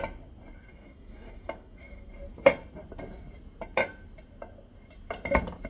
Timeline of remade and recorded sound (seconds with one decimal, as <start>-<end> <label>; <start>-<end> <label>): 0.0-0.7 recorded; 0.7-2.1 remade; 2.1-5.7 recorded